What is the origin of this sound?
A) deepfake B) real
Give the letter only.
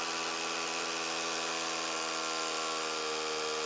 B